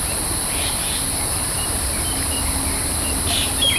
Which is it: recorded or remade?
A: recorded